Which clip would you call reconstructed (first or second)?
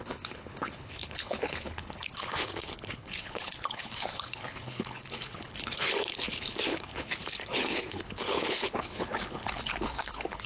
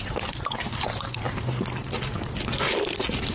first